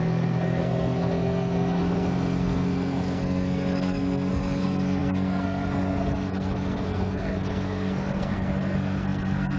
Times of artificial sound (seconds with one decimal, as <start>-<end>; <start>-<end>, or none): 0.0-9.6